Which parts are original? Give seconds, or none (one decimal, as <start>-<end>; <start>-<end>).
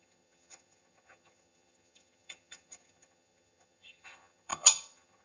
none